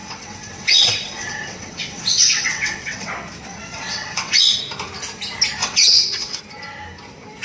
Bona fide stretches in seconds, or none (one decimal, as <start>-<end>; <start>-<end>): 3.1-3.5; 4.6-5.6; 6.4-7.4